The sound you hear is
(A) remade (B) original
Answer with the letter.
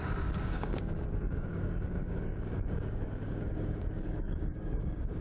A